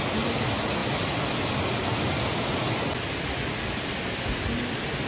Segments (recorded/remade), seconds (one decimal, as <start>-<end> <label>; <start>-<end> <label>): 0.0-5.1 recorded